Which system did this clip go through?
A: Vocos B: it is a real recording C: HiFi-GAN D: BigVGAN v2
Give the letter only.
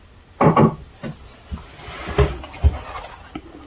B